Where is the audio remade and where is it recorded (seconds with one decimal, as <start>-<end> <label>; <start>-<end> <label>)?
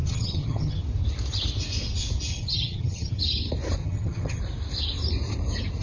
0.0-0.8 remade; 0.8-2.3 recorded; 2.3-3.2 remade; 3.2-3.8 recorded; 3.8-4.4 remade; 4.4-5.8 recorded